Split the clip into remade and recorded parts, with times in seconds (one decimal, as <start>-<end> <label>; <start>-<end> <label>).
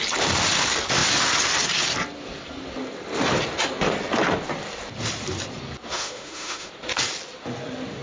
0.0-5.9 recorded; 5.9-6.7 remade; 6.7-8.0 recorded